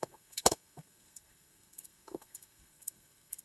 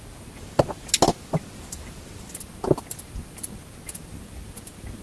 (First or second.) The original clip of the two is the second